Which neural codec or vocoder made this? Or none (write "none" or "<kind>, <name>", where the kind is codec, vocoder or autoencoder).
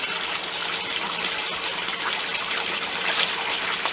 none